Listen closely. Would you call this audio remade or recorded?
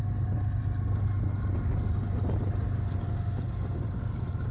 recorded